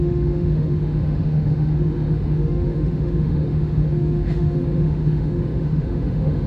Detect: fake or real fake